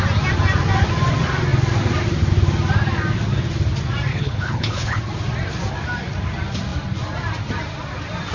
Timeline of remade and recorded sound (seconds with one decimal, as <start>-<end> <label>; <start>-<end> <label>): 0.0-4.1 recorded; 4.1-5.0 remade; 5.0-8.3 recorded